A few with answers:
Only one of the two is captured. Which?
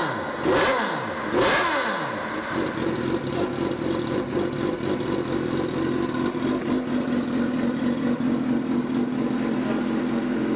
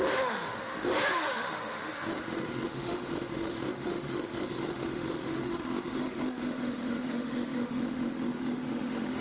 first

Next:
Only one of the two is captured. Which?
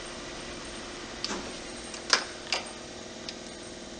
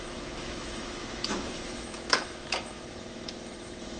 first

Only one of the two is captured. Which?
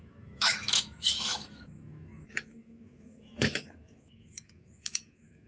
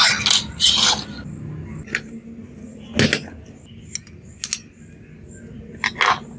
second